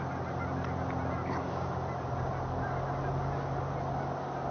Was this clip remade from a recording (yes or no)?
no